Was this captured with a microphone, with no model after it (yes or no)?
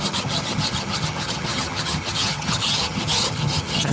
no